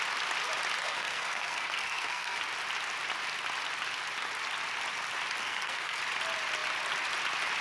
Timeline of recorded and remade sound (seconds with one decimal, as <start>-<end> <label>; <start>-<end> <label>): 0.0-0.8 recorded; 0.8-2.4 remade; 2.4-5.4 recorded; 5.4-6.0 remade; 6.0-7.6 recorded